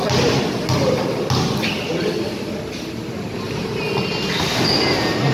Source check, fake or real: real